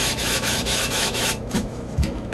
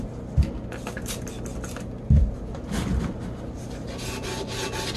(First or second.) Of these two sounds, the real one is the second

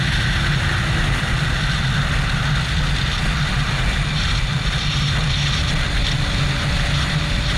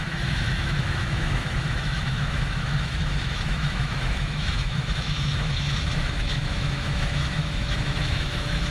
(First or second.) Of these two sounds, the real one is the first